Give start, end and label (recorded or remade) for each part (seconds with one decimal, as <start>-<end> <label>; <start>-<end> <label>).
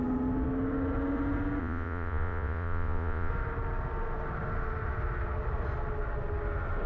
0.0-1.6 recorded; 1.6-3.3 remade; 3.3-6.9 recorded